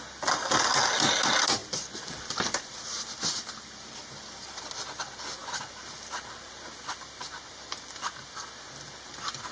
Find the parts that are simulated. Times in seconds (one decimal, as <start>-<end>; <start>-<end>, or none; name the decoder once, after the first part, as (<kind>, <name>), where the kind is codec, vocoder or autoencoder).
1.6-4.6 (vocoder, BigVGAN v2)